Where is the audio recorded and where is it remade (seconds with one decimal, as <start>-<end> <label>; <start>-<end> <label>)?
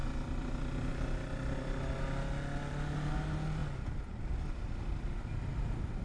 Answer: 0.0-6.0 recorded